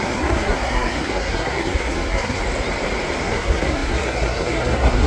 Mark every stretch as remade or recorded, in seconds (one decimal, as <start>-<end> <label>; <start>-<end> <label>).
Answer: 0.0-2.4 remade; 2.4-3.2 recorded; 3.2-5.1 remade